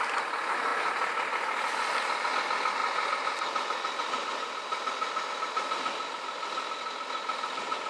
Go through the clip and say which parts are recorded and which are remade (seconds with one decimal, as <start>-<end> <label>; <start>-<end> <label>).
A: 0.0-7.9 recorded